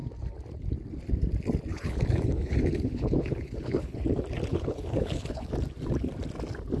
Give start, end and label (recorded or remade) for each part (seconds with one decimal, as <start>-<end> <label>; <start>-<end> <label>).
0.0-1.7 recorded; 1.7-4.0 remade; 4.0-4.5 recorded; 4.5-5.5 remade; 5.5-6.8 recorded